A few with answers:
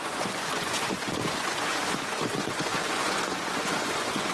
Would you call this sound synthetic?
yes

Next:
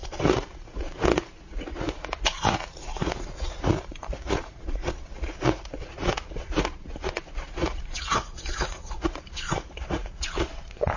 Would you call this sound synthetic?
yes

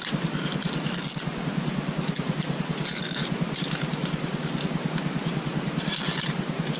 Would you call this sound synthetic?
no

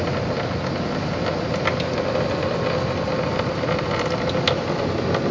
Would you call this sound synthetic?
no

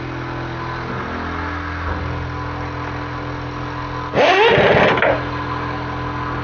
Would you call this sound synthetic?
no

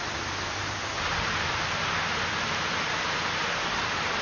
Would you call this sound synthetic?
no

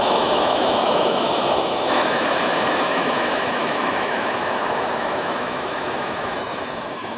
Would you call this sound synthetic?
yes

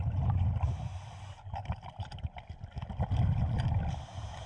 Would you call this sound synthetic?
no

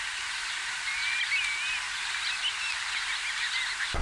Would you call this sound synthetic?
no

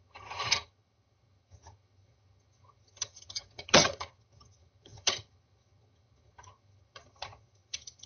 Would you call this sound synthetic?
yes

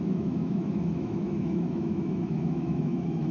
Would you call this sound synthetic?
yes